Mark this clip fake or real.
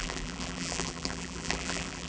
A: fake